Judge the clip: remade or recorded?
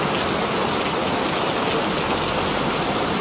recorded